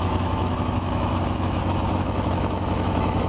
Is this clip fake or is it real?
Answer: fake